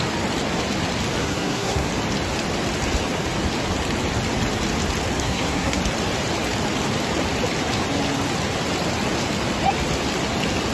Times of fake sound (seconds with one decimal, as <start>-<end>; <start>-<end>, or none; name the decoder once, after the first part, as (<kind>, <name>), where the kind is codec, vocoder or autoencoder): 1.2-1.9 (codec, SNAC); 5.2-5.8